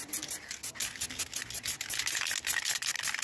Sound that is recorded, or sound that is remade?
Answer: recorded